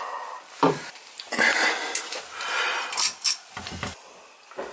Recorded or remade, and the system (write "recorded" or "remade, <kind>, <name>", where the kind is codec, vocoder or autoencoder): recorded